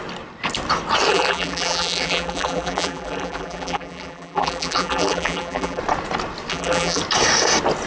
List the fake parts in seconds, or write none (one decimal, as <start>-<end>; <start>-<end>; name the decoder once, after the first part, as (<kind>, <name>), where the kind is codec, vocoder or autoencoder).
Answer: 1.1-5.8 (vocoder, BigVGAN v2); 6.5-7.0